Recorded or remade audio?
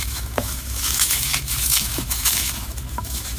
remade